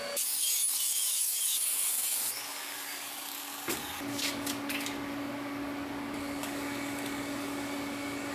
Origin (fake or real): fake